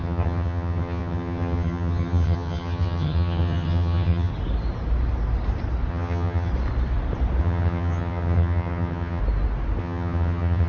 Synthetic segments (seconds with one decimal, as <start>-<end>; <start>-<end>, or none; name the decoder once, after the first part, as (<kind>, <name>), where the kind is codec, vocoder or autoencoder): 0.0-4.3 (vocoder, HiFi-GAN); 5.9-6.5; 7.4-9.2; 9.8-10.7